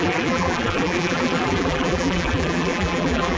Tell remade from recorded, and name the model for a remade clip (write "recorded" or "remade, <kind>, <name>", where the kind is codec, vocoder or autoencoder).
remade, vocoder, BigVGAN v2